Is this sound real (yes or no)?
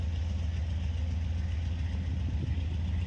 yes